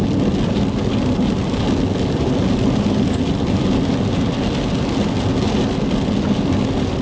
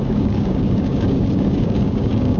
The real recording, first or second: first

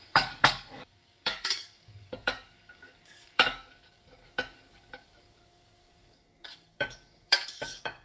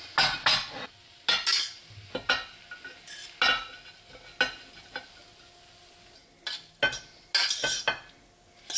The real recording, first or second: second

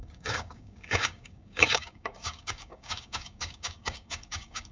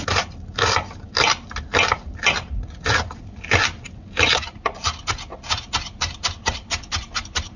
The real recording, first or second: second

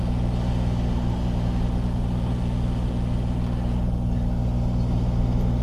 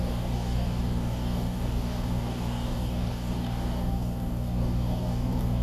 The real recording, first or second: first